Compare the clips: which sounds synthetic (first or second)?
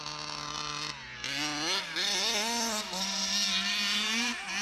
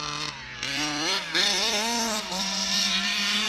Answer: second